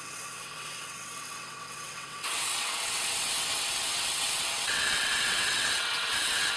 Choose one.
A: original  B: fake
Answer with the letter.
B